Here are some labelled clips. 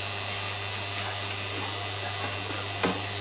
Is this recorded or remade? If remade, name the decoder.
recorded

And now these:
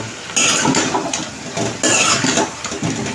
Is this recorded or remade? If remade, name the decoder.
recorded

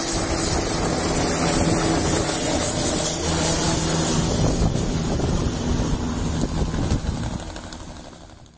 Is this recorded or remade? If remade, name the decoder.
recorded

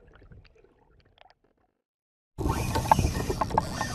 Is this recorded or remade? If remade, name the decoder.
recorded